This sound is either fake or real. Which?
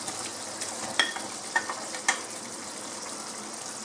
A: fake